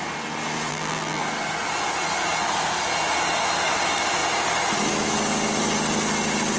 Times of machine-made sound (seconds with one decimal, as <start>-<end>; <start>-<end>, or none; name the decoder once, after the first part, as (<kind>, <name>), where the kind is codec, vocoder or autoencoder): 0.7-1.2 (vocoder, BigVGAN v2)